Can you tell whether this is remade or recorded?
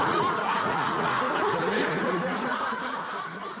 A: remade